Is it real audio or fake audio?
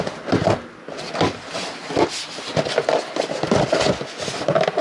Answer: real